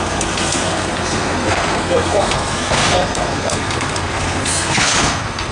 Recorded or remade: remade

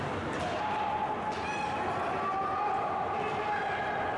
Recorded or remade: recorded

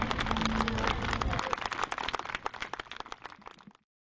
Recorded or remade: recorded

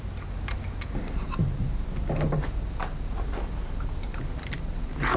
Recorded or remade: recorded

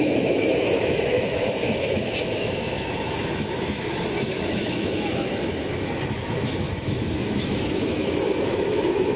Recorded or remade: remade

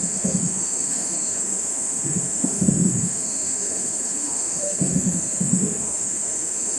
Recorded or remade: remade